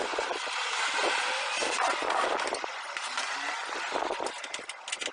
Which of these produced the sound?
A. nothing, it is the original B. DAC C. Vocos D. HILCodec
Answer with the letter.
A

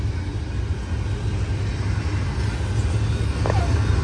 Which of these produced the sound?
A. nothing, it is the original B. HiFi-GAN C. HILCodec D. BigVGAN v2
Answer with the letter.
A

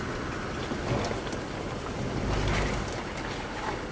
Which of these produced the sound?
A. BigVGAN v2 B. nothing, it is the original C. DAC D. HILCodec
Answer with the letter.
B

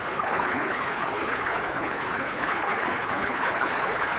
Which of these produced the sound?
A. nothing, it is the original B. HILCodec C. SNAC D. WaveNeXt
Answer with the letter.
B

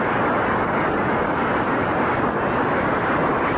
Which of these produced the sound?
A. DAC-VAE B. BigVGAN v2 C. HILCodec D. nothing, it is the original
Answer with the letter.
D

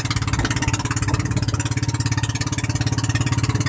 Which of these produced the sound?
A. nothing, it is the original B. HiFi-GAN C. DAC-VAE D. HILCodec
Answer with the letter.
A